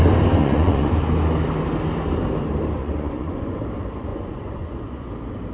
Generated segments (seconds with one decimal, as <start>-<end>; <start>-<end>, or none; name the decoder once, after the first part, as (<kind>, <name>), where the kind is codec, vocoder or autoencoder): 0.4-0.9 (vocoder, Vocos); 2.8-3.6; 4.1-5.1